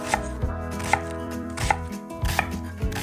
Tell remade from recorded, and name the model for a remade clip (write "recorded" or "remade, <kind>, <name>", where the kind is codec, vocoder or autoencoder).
remade, vocoder, BigVGAN v2